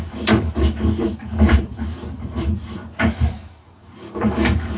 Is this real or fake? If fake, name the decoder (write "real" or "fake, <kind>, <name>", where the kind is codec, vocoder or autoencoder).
fake, codec, DAC